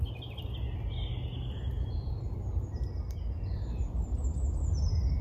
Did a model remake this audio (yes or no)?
no